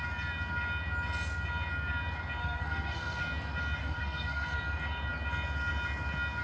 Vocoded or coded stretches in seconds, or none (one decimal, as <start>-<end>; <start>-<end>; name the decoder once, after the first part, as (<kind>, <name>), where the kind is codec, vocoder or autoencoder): 2.4-3.2 (codec, SNAC); 3.8-4.6

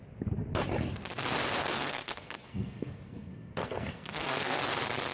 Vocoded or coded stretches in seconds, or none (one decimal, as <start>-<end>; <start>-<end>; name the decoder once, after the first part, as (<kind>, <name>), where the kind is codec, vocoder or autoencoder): 1.6-4.6 (codec, SNAC)

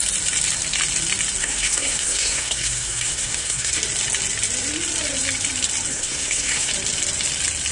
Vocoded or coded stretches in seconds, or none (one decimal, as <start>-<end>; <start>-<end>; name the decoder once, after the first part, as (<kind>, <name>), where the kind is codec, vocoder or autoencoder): 1.4-3.8 (codec, SNAC); 5.9-6.7

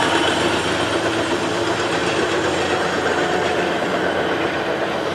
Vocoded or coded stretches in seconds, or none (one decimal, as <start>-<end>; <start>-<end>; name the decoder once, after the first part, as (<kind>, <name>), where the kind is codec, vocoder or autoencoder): none